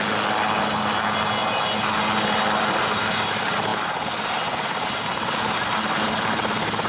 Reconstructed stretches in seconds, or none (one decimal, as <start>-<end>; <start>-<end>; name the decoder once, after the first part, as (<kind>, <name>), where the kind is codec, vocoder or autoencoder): none